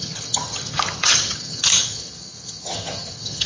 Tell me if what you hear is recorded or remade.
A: remade